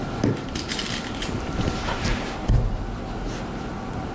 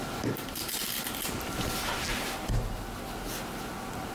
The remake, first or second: first